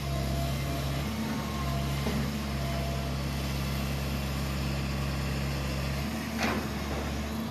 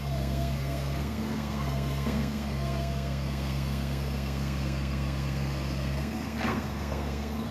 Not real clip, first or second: second